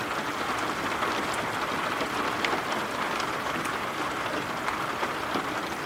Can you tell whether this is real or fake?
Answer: real